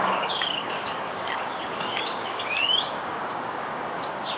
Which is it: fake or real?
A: fake